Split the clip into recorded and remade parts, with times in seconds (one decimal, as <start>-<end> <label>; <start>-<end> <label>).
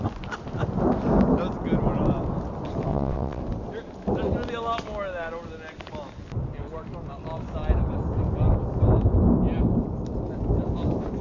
0.0-2.9 recorded; 2.9-3.4 remade; 3.4-11.2 recorded